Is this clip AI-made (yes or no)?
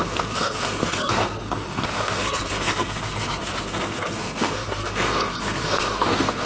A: yes